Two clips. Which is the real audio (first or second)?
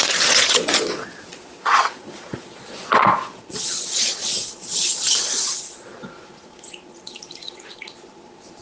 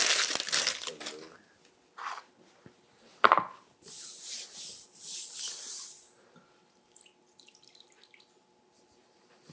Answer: second